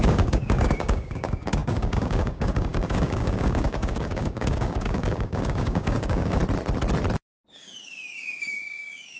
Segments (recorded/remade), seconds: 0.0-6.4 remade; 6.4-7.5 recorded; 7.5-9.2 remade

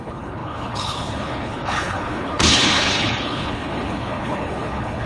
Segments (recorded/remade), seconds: 0.0-5.1 remade

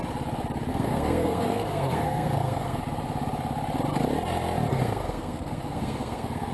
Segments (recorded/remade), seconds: 0.0-0.7 recorded; 0.7-2.8 remade; 2.8-4.7 recorded; 4.7-6.5 remade

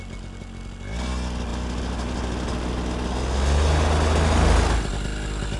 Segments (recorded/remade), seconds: 0.0-5.6 recorded

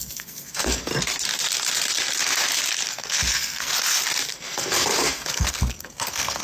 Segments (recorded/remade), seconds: 0.0-0.9 remade; 0.9-2.9 recorded; 2.9-3.7 remade; 3.7-4.3 recorded; 4.3-6.4 remade

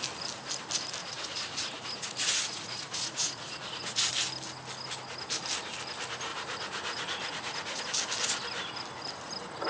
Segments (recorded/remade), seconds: 0.0-1.0 recorded; 1.0-4.1 remade; 4.1-6.3 recorded; 6.3-7.8 remade; 7.8-9.7 recorded

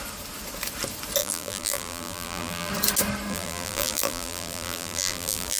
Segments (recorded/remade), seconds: 0.0-1.2 recorded; 1.2-2.7 remade; 2.7-3.3 recorded; 3.3-5.6 remade

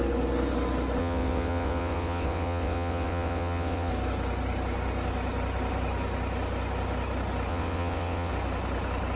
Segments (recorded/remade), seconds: 0.0-1.0 recorded; 1.0-3.9 remade; 3.9-7.5 recorded; 7.5-8.3 remade; 8.3-9.2 recorded